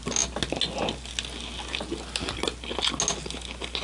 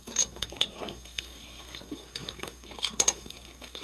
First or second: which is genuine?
first